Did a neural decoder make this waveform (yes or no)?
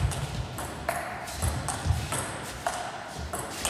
no